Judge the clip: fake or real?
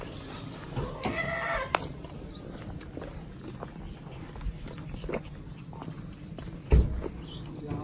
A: real